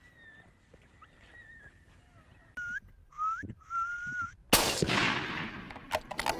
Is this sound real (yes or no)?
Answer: yes